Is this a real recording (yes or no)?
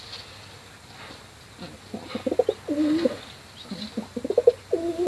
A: yes